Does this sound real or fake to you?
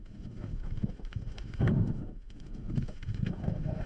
fake